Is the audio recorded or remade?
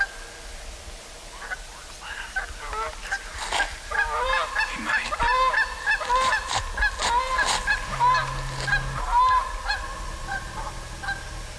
recorded